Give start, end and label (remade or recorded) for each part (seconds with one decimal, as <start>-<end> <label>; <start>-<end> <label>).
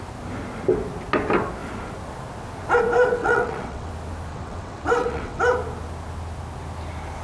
0.0-3.2 recorded; 3.2-3.9 remade; 3.9-4.3 recorded; 4.3-5.4 remade; 5.4-7.2 recorded